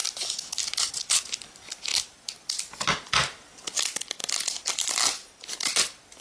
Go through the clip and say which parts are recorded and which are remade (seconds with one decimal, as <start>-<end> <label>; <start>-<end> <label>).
0.0-6.2 recorded